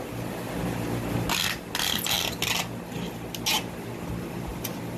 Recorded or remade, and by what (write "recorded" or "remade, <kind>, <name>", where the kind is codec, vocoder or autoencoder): recorded